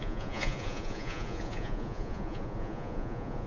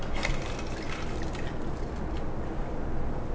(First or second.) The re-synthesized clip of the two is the first